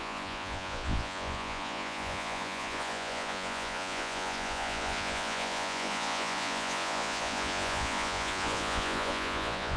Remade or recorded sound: remade